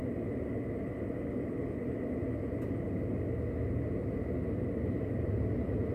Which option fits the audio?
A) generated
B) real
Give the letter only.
B